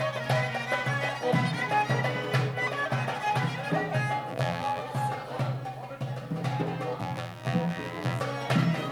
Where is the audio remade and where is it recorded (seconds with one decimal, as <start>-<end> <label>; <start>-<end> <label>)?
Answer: 0.0-4.3 recorded; 4.3-4.8 remade; 4.8-7.0 recorded; 7.0-8.2 remade; 8.2-8.9 recorded